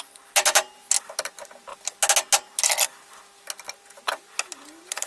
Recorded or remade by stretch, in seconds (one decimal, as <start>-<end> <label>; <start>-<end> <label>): 0.0-5.1 recorded